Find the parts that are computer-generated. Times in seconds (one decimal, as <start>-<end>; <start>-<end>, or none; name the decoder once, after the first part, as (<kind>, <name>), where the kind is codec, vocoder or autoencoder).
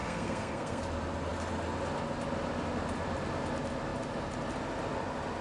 0.0-0.8 (codec, SNAC)